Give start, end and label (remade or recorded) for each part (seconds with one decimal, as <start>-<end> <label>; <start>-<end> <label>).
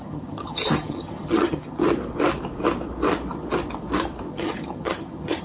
0.0-1.8 remade; 1.8-4.3 recorded; 4.3-5.4 remade